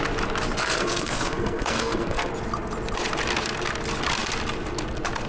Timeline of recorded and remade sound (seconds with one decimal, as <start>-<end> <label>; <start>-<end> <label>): 0.0-0.6 recorded; 0.6-2.3 remade; 2.3-5.3 recorded